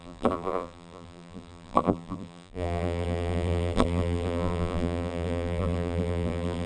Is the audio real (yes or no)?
no